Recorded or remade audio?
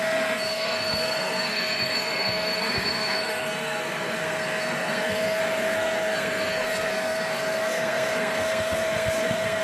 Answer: remade